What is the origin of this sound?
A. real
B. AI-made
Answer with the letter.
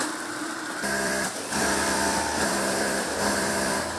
B